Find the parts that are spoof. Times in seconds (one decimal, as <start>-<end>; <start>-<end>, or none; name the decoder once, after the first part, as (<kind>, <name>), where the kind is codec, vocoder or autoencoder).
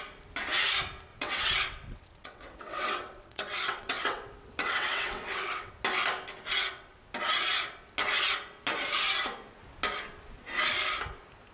1.1-5.7 (vocoder, WaveNeXt)